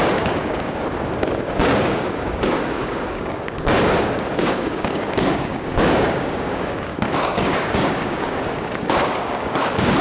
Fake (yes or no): yes